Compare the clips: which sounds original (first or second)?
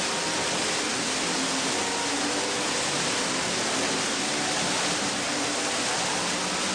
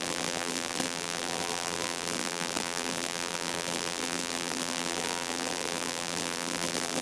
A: first